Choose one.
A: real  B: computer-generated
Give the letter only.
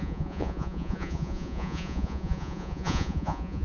B